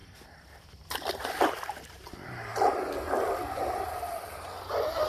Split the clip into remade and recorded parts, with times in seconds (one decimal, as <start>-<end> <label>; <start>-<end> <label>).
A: 0.0-1.9 remade; 1.9-5.1 recorded